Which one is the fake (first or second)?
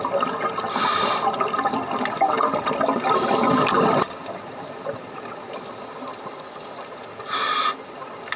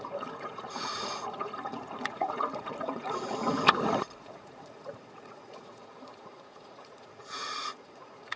second